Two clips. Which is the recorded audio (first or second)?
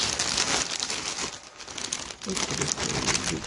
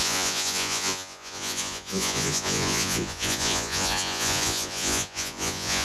first